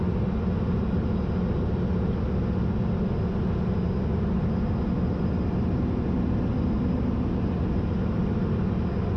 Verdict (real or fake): real